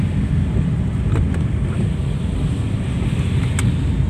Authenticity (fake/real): real